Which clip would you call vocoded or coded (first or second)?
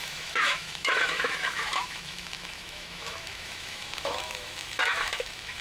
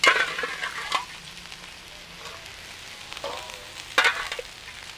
first